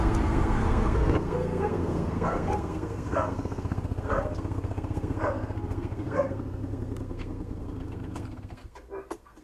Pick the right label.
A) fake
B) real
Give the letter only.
A